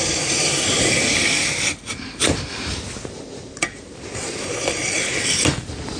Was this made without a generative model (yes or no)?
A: yes